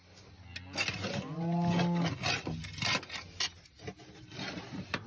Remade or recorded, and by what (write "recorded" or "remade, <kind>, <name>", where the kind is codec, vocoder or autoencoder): recorded